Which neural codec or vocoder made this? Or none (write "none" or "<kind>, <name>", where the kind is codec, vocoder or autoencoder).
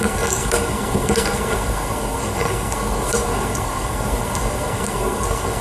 codec, SNAC